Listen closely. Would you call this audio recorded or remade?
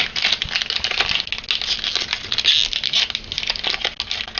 recorded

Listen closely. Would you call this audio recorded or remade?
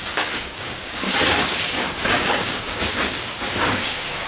remade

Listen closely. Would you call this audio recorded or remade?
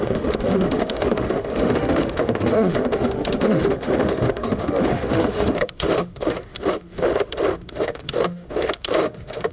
remade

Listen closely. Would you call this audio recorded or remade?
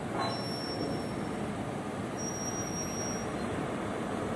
recorded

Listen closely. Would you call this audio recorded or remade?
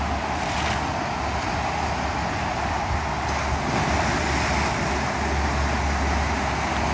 recorded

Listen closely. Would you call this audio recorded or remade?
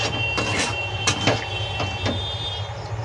recorded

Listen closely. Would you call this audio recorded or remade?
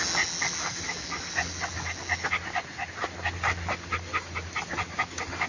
recorded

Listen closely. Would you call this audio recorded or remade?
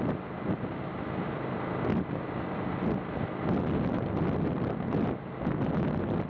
recorded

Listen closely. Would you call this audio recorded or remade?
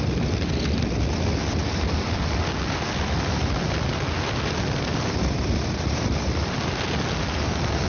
recorded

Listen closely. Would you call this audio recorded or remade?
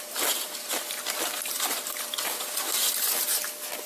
recorded